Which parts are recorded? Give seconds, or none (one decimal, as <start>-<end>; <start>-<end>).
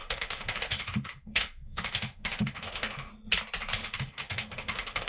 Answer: 3.1-3.8